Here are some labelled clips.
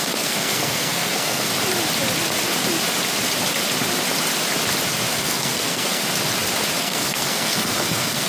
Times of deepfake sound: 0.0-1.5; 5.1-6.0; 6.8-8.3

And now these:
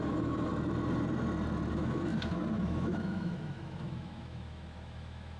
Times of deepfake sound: 0.0-0.5; 1.7-5.4

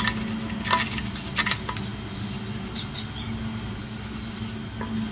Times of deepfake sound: none